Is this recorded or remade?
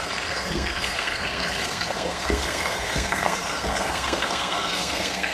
remade